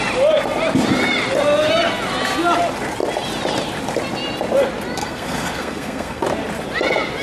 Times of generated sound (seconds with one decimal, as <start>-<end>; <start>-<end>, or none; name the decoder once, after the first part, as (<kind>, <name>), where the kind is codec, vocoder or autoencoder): 5.0-6.2 (codec, SNAC)